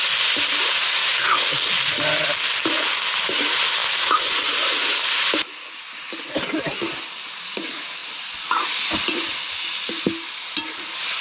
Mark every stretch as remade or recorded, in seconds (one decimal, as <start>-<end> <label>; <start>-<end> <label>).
0.0-1.0 recorded; 1.0-1.5 remade; 1.5-11.2 recorded